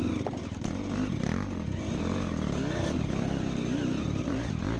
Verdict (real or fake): real